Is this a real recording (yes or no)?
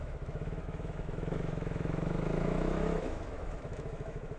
no